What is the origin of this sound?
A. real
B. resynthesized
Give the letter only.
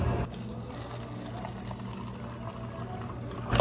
A